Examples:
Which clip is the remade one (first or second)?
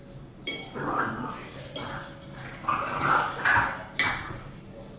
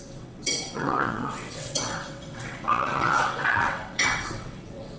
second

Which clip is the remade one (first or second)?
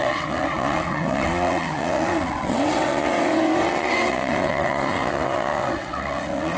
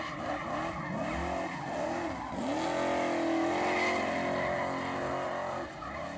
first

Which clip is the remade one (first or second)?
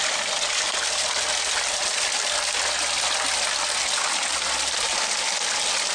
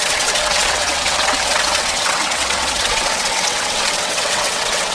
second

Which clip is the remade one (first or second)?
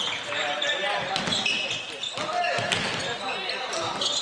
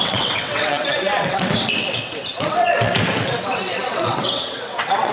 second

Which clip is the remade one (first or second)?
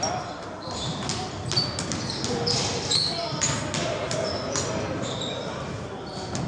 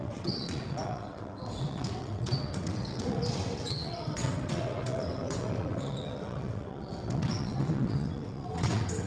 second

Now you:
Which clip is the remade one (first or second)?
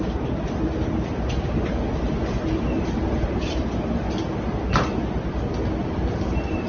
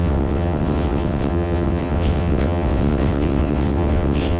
second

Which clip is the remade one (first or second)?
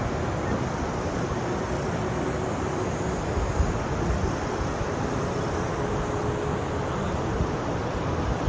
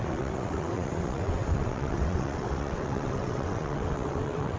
second